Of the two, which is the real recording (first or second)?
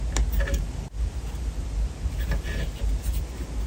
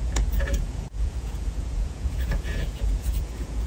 first